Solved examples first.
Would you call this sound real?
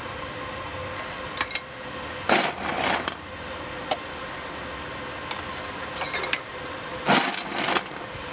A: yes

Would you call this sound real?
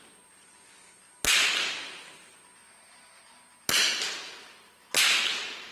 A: yes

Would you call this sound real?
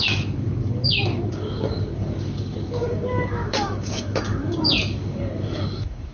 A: no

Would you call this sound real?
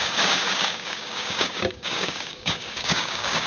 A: no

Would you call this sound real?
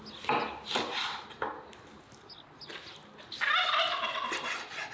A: yes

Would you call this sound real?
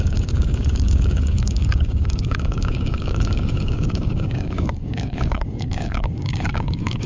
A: no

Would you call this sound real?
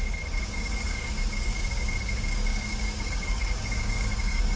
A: no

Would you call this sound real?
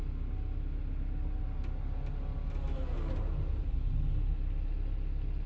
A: yes